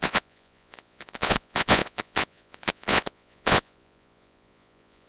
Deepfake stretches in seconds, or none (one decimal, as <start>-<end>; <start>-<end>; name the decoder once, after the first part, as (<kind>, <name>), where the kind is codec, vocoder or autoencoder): 0.0-5.1 (vocoder, Vocos)